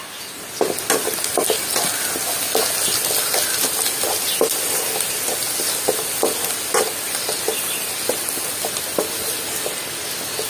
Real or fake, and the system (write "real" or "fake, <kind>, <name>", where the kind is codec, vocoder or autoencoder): real